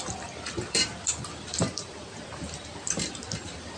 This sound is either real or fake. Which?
fake